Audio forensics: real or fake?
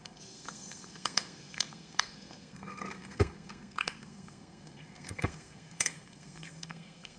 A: fake